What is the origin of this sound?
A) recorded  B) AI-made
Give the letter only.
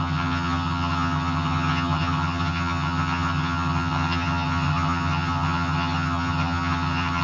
B